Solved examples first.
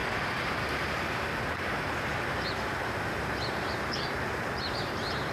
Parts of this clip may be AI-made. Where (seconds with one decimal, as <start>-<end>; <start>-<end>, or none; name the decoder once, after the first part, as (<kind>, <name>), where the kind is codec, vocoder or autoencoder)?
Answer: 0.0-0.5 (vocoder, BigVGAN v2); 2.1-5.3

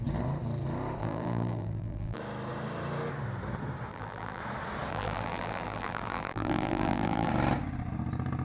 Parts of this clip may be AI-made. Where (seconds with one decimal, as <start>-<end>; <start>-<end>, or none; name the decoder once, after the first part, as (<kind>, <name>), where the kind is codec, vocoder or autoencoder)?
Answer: 1.0-2.2 (vocoder, BigVGAN v2); 3.9-4.4; 4.9-7.3

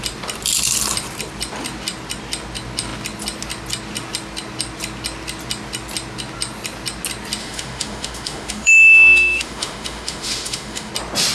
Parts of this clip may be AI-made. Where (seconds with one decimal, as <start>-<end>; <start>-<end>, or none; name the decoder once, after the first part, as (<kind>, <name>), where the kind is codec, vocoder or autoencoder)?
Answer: 7.4-10.9 (autoencoder, DAC-VAE)

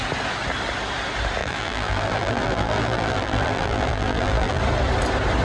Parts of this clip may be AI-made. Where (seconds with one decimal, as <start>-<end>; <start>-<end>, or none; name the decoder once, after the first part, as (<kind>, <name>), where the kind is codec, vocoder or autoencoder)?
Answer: 1.4-4.6 (vocoder, BigVGAN v2)

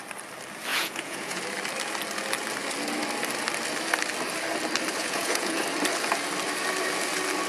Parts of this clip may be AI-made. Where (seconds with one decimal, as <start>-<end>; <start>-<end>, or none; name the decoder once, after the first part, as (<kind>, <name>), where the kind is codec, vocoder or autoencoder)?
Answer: 0.7-1.4 (vocoder, Vocos); 5.0-5.6